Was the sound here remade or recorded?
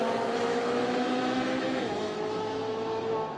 remade